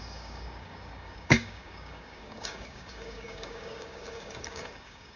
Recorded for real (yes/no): no